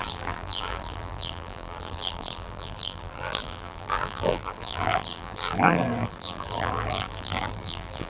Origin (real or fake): fake